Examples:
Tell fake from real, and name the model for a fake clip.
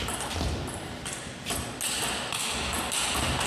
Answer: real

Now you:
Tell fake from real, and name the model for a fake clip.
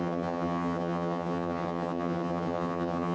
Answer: fake, vocoder, HiFi-GAN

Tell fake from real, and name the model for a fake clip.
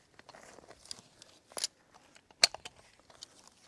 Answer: real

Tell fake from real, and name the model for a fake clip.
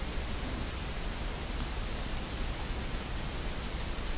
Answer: real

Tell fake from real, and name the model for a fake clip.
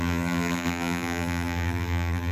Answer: fake, vocoder, BigVGAN v2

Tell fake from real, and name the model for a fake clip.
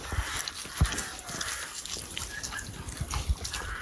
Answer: fake, vocoder, BigVGAN v2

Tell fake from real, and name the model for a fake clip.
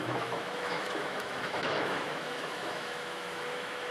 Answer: fake, autoencoder, DAC-VAE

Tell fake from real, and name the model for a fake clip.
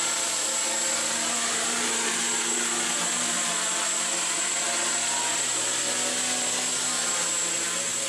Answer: real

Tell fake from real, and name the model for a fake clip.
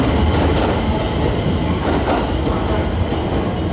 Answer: real